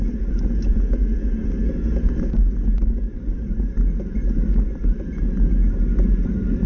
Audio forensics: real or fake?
real